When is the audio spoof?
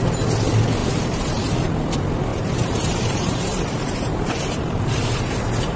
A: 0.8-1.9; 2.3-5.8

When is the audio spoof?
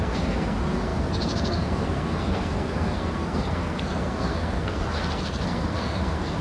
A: 0.0-6.4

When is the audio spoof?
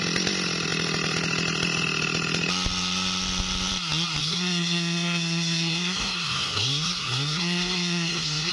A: 4.2-8.5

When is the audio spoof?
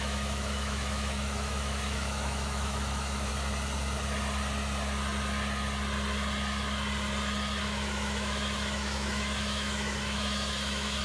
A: 0.0-3.3; 7.6-11.0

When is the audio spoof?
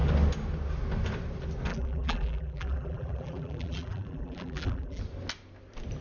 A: 1.7-5.0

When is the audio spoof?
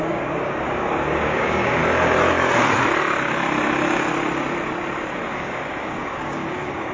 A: 0.0-1.8; 5.3-6.9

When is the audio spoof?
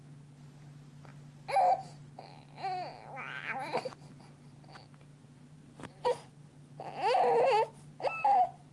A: 5.1-6.3; 7.9-8.7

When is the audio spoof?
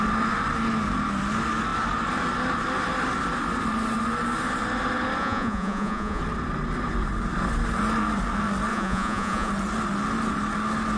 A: 5.2-6.2; 8.7-9.5